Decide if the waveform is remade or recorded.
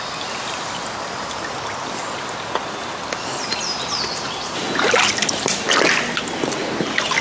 recorded